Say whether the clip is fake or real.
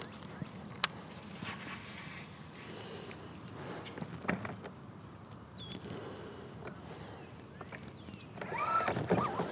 real